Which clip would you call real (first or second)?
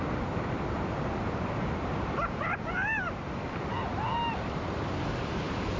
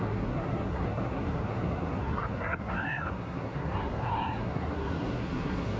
first